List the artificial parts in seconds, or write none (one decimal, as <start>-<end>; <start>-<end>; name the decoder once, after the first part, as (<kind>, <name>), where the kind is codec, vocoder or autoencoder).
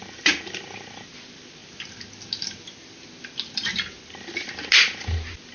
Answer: none